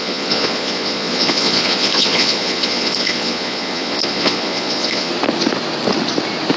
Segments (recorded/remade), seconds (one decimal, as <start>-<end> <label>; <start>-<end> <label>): 0.0-5.1 remade; 5.1-6.6 recorded